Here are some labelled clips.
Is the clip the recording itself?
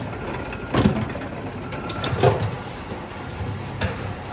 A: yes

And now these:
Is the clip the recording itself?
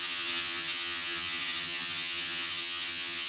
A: no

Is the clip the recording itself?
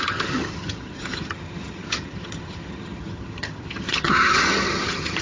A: no